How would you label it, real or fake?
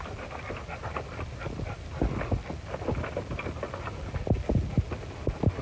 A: real